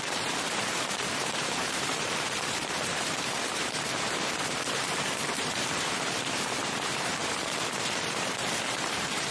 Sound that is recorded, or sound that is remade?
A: remade